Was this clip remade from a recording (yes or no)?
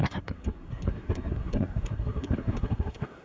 yes